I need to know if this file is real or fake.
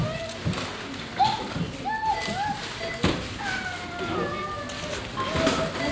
real